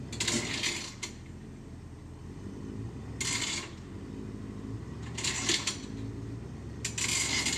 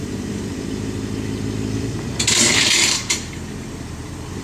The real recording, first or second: first